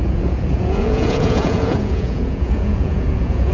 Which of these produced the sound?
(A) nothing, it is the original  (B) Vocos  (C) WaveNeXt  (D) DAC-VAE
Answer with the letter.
B